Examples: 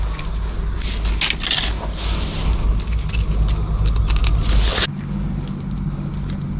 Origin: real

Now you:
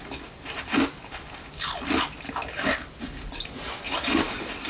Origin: real